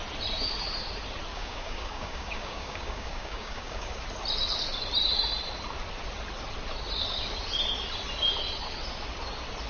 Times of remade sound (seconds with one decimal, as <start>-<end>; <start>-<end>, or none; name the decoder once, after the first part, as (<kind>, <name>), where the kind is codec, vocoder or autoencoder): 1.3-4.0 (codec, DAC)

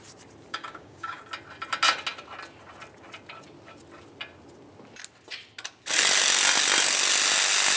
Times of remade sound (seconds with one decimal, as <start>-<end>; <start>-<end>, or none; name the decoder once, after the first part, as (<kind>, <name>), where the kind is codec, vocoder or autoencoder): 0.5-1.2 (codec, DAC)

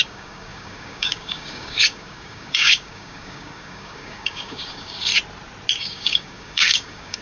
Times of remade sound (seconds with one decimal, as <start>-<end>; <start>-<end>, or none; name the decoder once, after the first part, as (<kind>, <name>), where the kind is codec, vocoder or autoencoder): 0.0-5.1 (codec, DAC); 5.8-7.2